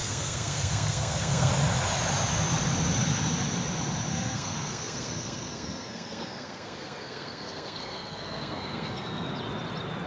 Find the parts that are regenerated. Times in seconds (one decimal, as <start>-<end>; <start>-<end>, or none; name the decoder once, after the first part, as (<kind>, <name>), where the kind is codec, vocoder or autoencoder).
0.0-1.5 (codec, SNAC); 4.1-9.3